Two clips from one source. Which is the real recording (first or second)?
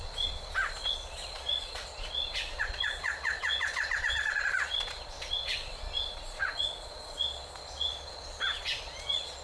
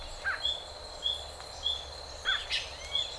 second